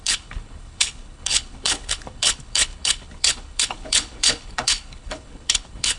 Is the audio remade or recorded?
remade